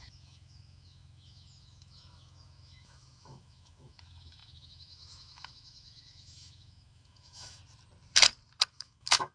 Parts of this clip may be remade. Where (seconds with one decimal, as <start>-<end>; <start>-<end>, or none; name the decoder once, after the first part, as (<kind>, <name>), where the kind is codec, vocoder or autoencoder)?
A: 0.0-7.6 (autoencoder, DAC-VAE); 8.7-9.3